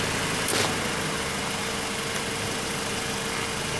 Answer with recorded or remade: recorded